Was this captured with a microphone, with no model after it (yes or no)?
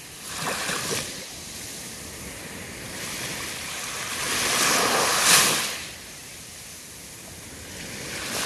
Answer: yes